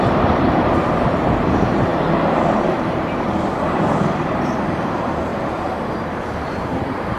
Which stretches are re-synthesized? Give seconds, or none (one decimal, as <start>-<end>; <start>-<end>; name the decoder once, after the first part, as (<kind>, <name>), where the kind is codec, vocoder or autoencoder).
0.0-1.9 (vocoder, BigVGAN v2); 2.4-5.3; 5.9-7.2